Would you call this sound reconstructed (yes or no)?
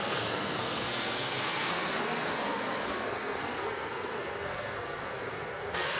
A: yes